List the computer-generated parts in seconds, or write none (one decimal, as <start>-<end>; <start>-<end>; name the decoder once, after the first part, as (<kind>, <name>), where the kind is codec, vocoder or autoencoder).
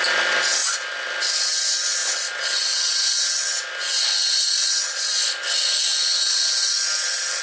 none